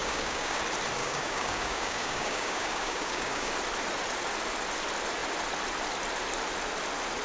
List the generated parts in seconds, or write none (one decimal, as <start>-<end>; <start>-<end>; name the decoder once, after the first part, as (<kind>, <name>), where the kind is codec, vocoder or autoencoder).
0.0-0.6 (codec, DAC); 1.0-3.5